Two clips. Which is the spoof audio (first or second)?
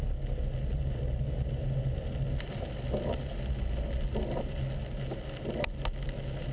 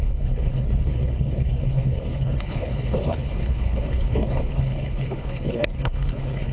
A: second